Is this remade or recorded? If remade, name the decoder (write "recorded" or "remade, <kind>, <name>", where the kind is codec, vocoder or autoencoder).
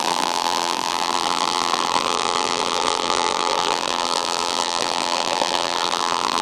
remade, vocoder, BigVGAN v2